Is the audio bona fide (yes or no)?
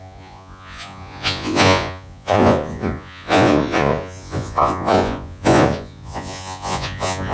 no